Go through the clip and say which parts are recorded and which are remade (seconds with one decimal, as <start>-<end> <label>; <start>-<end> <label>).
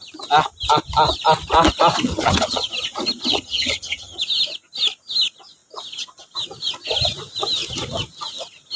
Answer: 0.0-2.1 recorded; 2.1-2.7 remade; 2.7-3.3 recorded; 3.3-4.2 remade; 4.2-8.8 recorded